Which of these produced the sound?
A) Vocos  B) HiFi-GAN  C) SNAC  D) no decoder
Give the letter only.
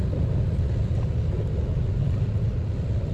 D